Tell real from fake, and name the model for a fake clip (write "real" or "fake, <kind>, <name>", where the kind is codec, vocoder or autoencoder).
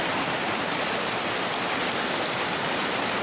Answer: real